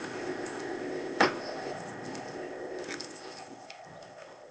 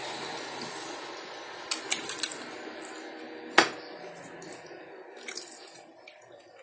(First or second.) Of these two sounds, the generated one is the first